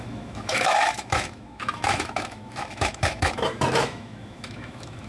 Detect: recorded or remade remade